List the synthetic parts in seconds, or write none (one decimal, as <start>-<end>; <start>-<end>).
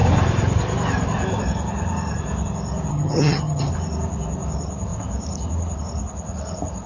2.9-3.7